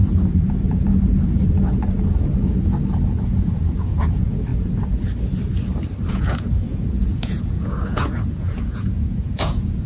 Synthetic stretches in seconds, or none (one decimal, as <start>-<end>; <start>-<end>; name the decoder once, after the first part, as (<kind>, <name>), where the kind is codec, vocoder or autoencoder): 3.2-4.5 (vocoder, Vocos); 6.1-9.9